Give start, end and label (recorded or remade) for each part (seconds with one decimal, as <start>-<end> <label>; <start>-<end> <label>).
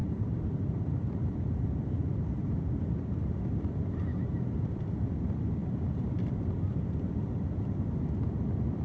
0.0-3.4 remade; 3.4-4.1 recorded; 4.1-4.9 remade; 4.9-5.6 recorded; 5.6-7.2 remade; 7.2-8.8 recorded